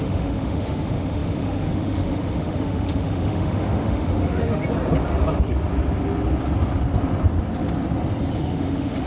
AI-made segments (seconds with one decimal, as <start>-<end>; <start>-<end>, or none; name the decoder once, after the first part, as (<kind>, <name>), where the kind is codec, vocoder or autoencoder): 0.0-4.6 (autoencoder, DAC-VAE); 8.4-9.1